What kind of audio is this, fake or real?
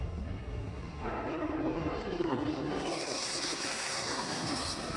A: fake